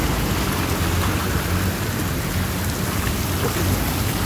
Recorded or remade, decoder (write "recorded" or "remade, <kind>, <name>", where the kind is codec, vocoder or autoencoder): recorded